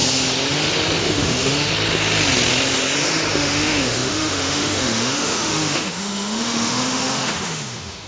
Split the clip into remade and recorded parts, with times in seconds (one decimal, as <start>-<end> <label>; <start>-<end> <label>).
0.0-1.0 recorded; 1.0-1.7 remade; 1.7-3.3 recorded; 3.3-8.1 remade